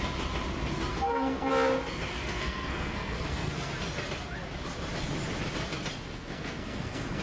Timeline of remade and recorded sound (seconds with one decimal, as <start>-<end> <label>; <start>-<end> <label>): 0.0-0.9 recorded; 0.9-1.5 remade; 1.5-2.1 recorded; 2.1-3.7 remade; 3.7-6.1 recorded; 6.1-7.2 remade